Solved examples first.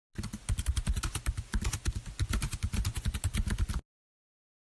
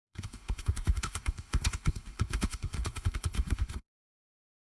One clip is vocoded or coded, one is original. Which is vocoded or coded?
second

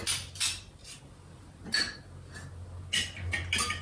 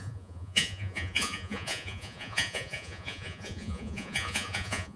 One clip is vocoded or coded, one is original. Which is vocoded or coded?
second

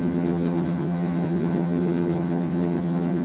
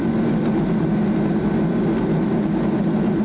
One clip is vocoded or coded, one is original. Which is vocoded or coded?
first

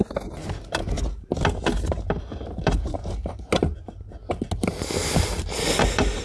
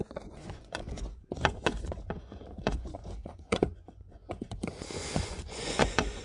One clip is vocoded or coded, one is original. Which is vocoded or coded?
second